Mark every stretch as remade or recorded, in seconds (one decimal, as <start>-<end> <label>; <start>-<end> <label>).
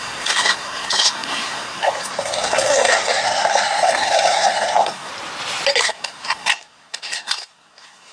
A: 0.0-5.1 remade; 5.1-5.8 recorded; 5.8-8.1 remade